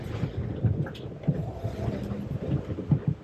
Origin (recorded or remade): recorded